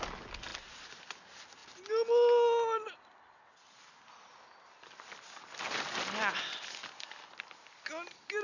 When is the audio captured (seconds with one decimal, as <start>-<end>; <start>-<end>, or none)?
0.0-8.4